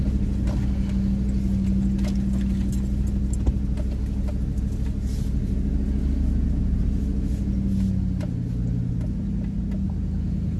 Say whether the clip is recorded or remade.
recorded